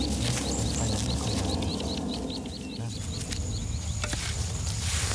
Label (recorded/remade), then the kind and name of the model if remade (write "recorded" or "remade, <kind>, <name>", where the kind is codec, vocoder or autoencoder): recorded